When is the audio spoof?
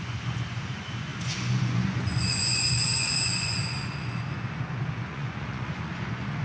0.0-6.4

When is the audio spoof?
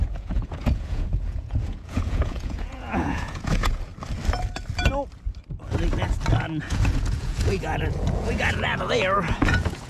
0.0-3.9; 6.6-9.9